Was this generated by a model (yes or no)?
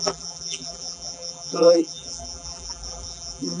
yes